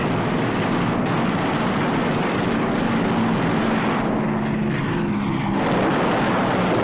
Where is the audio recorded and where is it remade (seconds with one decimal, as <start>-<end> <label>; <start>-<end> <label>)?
0.0-6.8 recorded